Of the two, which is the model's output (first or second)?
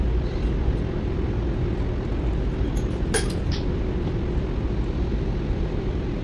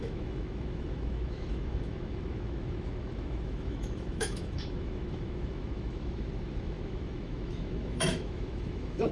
second